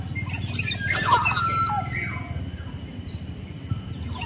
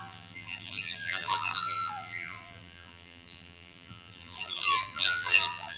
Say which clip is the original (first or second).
first